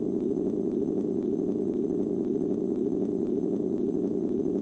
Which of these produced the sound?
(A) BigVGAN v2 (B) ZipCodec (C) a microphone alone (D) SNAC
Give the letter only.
A